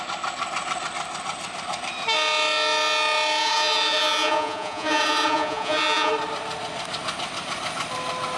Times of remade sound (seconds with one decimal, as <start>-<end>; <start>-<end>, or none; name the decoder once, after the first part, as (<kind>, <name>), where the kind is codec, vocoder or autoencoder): 3.4-6.1 (vocoder, Vocos)